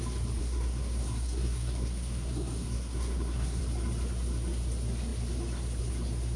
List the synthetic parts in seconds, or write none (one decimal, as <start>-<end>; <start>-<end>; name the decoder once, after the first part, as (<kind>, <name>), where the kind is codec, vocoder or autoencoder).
0.4-3.6 (codec, SNAC)